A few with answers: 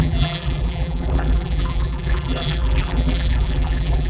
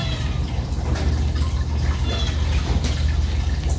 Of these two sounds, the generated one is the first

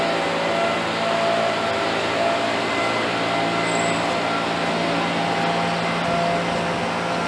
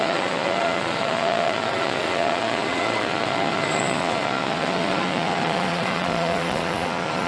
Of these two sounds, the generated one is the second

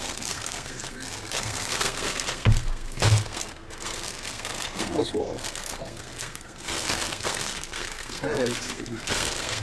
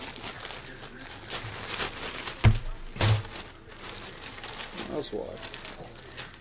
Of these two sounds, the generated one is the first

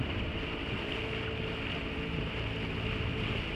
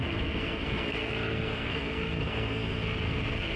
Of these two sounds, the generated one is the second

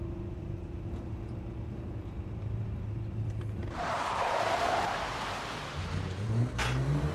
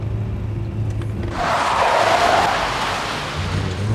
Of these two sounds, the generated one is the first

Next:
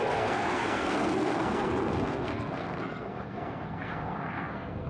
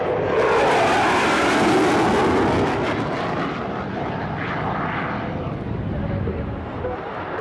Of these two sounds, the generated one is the first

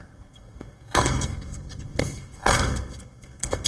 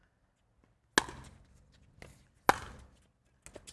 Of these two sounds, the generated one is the first